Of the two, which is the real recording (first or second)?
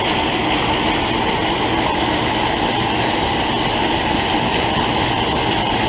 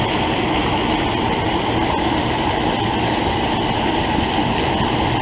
first